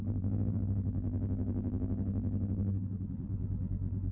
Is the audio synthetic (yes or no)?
yes